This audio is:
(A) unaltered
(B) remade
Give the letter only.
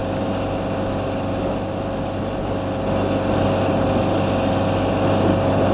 A